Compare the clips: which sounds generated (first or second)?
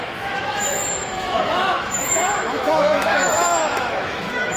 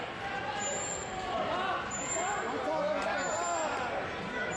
first